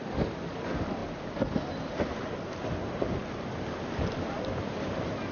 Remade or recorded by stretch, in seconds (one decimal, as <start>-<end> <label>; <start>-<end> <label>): 0.0-5.3 recorded